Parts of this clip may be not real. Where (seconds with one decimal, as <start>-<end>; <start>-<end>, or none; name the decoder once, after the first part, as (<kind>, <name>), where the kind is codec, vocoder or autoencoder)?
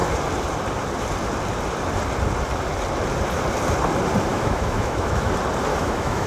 4.3-5.3 (autoencoder, DAC-VAE); 5.7-6.3